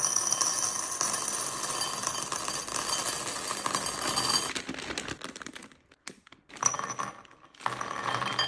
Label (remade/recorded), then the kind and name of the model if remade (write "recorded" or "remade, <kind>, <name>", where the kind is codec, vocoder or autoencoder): recorded